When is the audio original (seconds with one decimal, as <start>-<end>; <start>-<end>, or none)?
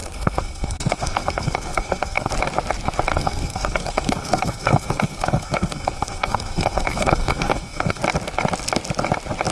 2.3-3.1; 8.0-9.5